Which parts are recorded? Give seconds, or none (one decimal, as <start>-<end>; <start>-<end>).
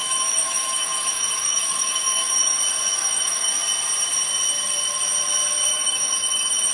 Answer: 2.6-3.0; 3.5-5.7